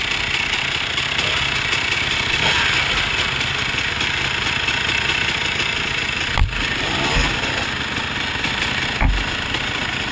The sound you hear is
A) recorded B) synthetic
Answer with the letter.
A